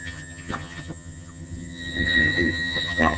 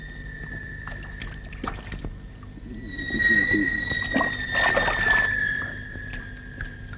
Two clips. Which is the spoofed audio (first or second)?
first